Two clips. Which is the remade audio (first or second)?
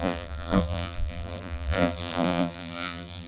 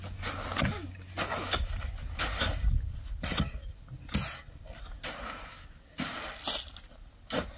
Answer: first